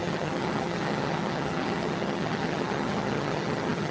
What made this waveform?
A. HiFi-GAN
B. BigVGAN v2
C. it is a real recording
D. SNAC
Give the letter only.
A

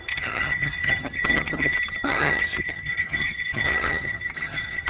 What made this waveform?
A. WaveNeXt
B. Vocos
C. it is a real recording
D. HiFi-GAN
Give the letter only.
D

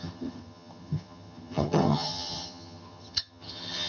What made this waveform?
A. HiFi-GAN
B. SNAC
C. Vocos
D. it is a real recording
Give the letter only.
A